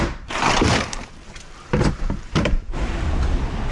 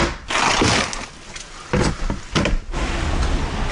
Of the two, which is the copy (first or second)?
first